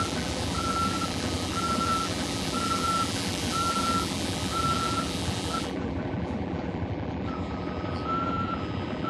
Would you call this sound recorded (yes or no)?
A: no